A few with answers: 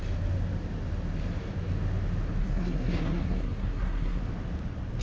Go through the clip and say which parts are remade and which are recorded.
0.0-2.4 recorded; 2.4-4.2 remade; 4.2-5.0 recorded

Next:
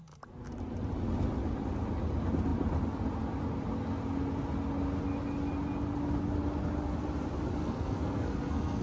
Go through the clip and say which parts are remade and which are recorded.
0.0-7.6 recorded; 7.6-8.8 remade

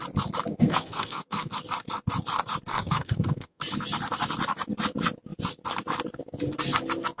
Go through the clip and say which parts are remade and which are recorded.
0.0-0.5 recorded; 0.5-1.5 remade; 1.5-2.7 recorded; 2.7-3.6 remade; 3.6-7.2 recorded

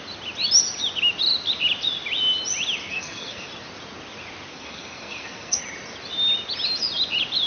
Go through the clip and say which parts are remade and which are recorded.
0.0-2.9 recorded; 2.9-3.5 remade; 3.5-4.5 recorded; 4.5-5.6 remade; 5.6-7.5 recorded